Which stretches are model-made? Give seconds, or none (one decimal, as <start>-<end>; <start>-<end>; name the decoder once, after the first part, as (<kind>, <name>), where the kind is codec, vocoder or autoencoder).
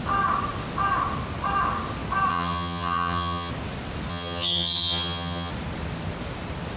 2.3-3.5 (vocoder, HiFi-GAN); 4.1-5.5